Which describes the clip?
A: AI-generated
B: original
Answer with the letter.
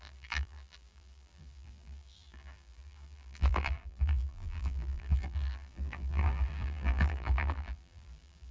A